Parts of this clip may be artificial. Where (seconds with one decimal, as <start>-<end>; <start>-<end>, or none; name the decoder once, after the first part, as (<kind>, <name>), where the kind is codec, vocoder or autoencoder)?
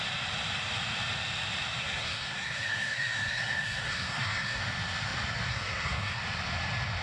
1.8-4.6 (codec, SNAC); 5.5-6.2